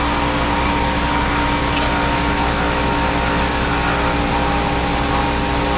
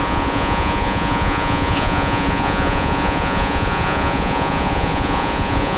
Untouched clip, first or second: first